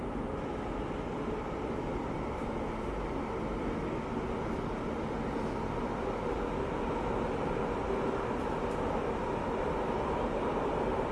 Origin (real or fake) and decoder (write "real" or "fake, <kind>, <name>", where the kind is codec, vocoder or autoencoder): real